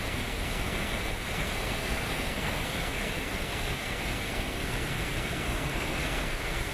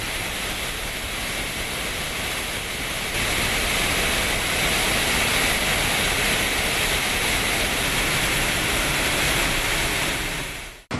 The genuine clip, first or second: second